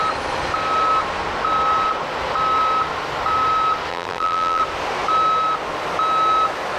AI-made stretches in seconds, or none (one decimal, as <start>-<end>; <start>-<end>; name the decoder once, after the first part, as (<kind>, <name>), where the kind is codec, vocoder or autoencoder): 3.9-4.6 (vocoder, BigVGAN v2)

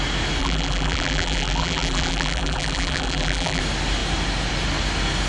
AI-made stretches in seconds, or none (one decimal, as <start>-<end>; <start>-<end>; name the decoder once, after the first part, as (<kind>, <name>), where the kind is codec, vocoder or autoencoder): 0.4-3.6 (vocoder, BigVGAN v2)

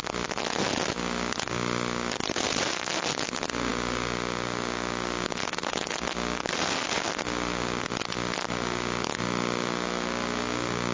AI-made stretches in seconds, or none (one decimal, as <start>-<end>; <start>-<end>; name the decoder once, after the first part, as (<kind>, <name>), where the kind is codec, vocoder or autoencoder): none

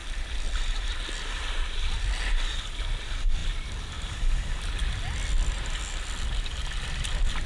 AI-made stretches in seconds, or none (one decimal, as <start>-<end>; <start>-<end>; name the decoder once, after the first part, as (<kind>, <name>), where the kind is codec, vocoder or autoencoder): none